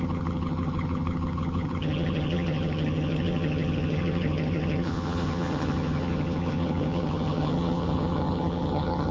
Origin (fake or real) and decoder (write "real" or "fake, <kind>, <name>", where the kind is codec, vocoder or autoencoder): fake, vocoder, HiFi-GAN